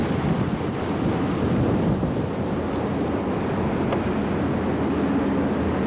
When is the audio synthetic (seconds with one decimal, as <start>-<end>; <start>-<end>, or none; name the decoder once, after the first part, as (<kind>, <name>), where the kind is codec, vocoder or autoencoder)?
none